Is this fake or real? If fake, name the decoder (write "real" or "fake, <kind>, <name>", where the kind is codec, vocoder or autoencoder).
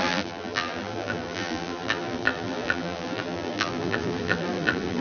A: fake, vocoder, BigVGAN v2